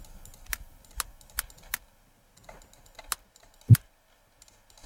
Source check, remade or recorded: recorded